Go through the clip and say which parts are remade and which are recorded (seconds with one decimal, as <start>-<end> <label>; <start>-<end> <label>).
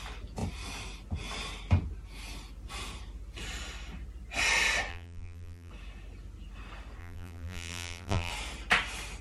0.0-4.9 recorded; 4.9-5.7 remade; 5.7-7.0 recorded; 7.0-8.3 remade; 8.3-9.2 recorded